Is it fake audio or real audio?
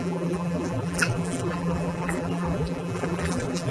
fake